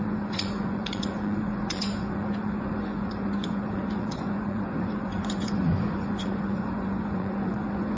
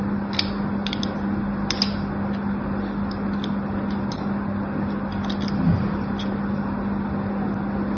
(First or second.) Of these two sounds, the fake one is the first